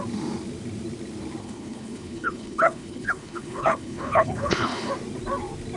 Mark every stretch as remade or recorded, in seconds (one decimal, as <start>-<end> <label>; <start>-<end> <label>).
0.0-1.4 recorded; 1.4-4.9 remade; 4.9-5.8 recorded